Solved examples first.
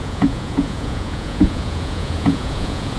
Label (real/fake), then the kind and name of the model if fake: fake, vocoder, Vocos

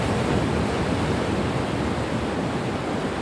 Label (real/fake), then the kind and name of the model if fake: real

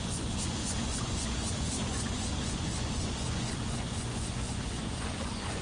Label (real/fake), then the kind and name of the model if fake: fake, vocoder, Vocos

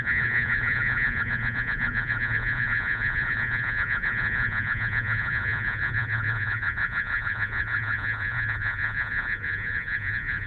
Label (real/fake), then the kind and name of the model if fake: fake, vocoder, Vocos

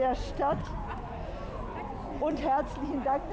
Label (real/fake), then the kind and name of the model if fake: real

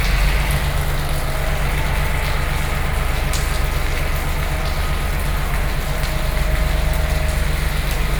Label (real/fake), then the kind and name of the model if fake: real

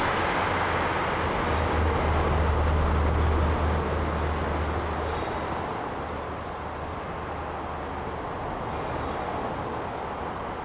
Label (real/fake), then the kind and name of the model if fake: real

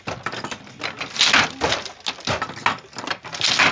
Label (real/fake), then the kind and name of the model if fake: real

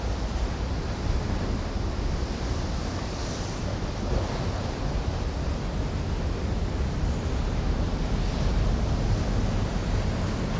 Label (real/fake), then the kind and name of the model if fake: real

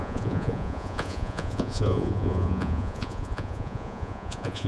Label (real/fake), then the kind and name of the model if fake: fake, vocoder, Vocos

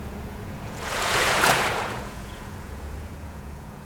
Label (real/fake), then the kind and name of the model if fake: fake, vocoder, Vocos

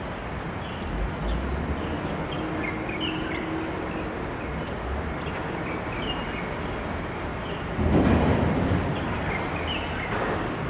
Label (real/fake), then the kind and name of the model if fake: real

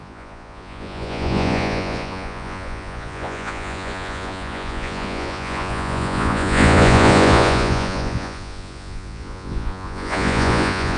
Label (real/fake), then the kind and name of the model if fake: fake, vocoder, Vocos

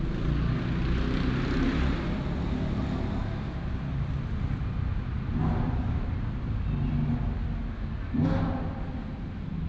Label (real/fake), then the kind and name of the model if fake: real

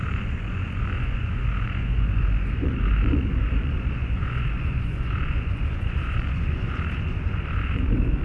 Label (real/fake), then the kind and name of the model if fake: fake, vocoder, Vocos